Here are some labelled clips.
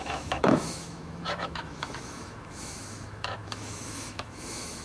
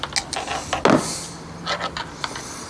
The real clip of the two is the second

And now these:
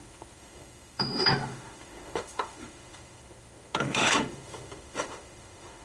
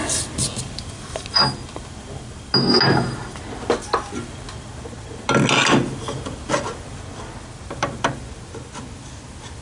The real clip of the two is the second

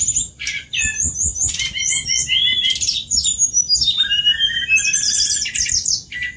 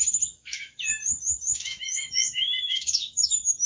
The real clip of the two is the first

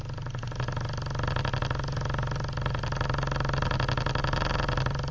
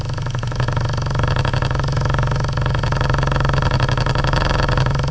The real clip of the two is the first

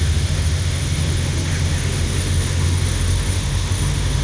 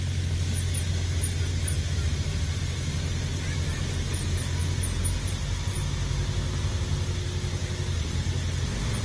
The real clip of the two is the second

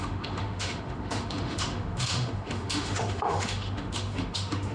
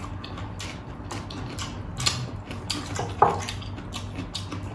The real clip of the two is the second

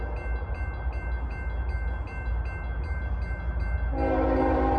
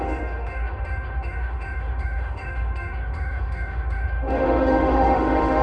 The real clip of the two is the first